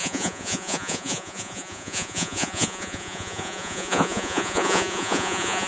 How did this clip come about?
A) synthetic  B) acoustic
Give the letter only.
A